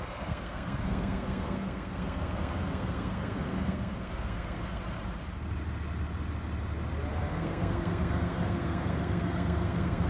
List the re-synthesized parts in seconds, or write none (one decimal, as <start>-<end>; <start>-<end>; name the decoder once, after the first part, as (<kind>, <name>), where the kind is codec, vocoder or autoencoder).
0.0-4.8 (codec, SNAC); 7.1-10.1